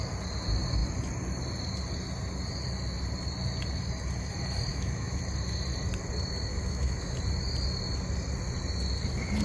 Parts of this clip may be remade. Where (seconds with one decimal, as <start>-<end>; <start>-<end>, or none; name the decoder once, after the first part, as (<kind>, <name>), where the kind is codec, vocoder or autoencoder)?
4.7-5.2 (autoencoder, DAC-VAE); 6.5-7.2